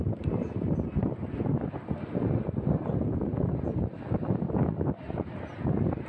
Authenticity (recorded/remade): recorded